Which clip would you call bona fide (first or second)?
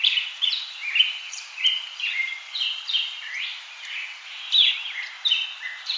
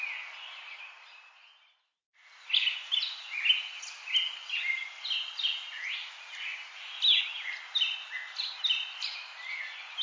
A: second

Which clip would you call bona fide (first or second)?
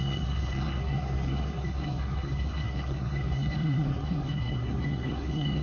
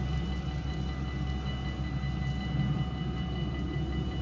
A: second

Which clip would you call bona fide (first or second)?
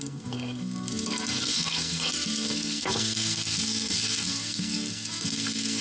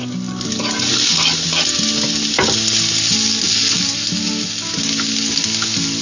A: second